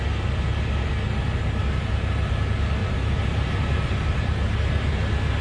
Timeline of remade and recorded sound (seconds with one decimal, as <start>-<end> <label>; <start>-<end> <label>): 0.0-2.8 recorded; 2.8-4.9 remade; 4.9-5.4 recorded